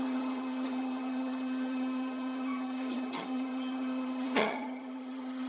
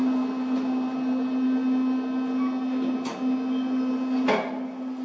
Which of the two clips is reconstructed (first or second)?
first